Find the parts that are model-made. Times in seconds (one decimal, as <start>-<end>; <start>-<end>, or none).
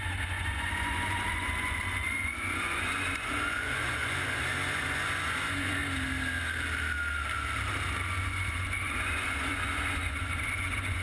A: 0.0-5.8; 8.2-11.0